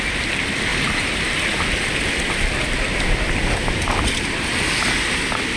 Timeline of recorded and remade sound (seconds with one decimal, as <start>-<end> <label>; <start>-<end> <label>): 0.0-0.7 recorded; 0.7-2.3 remade; 2.3-2.9 recorded; 2.9-4.1 remade; 4.1-5.6 recorded